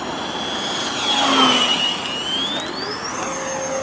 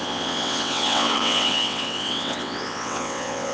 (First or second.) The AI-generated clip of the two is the second